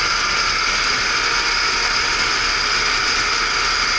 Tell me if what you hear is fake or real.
real